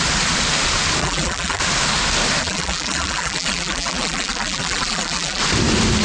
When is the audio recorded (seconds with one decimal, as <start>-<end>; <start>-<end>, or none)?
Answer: 0.0-1.0; 1.6-2.4; 5.4-6.0